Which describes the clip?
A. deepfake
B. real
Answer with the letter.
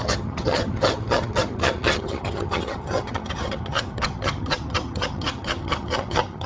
A